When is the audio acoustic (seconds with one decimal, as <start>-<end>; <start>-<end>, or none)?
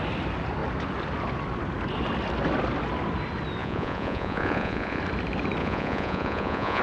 0.0-3.6; 5.0-5.6